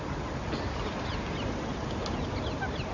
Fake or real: real